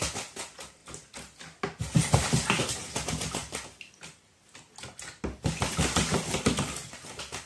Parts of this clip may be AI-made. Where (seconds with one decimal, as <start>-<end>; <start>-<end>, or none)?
none